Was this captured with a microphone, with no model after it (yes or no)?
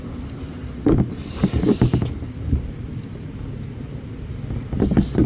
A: yes